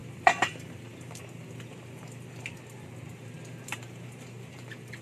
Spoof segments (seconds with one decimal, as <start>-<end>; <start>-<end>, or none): 0.0-1.2; 3.1-5.0